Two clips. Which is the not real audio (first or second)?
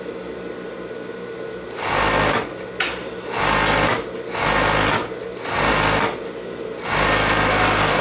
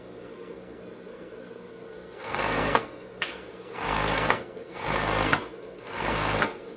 second